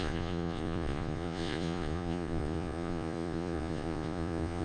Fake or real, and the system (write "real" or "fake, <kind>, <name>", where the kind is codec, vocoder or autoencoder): fake, vocoder, Vocos